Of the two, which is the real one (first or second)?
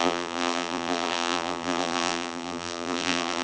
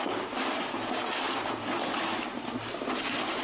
second